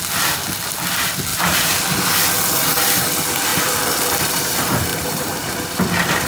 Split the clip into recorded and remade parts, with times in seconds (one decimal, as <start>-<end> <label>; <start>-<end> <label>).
0.0-1.3 recorded; 1.3-1.8 remade; 1.8-4.9 recorded; 4.9-5.5 remade; 5.5-6.3 recorded